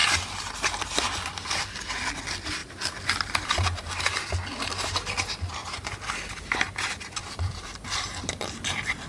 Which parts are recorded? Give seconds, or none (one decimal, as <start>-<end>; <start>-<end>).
0.0-2.6; 4.0-5.6; 6.1-7.2